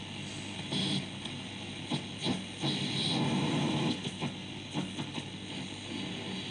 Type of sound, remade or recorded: recorded